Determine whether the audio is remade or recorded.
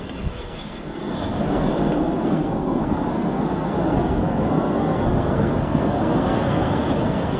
remade